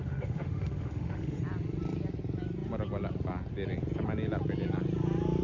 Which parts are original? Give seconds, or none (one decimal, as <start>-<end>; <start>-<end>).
1.4-5.4